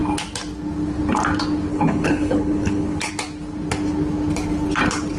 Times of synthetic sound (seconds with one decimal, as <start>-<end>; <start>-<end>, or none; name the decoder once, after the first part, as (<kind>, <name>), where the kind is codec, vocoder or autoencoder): 1.7-3.1 (codec, HILCodec)